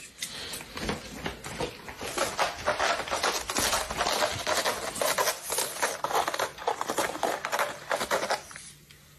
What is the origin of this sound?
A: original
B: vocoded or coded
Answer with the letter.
A